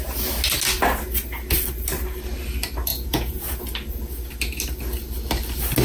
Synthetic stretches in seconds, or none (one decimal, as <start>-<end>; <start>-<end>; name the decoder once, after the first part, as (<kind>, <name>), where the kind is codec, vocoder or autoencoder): 2.9-3.6 (vocoder, Vocos)